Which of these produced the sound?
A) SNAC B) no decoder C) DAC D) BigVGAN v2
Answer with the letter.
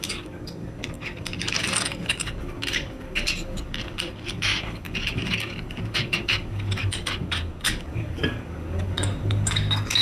C